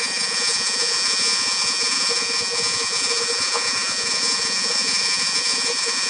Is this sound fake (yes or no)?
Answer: yes